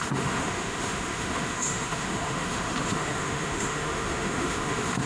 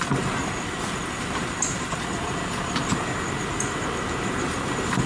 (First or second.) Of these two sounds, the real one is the second